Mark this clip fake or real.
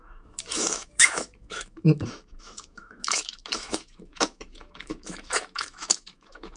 fake